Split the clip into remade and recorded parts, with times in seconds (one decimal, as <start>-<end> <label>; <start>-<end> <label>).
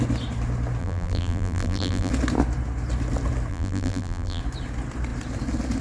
0.0-0.8 recorded; 0.8-2.1 remade; 2.1-3.5 recorded; 3.5-4.4 remade; 4.4-5.8 recorded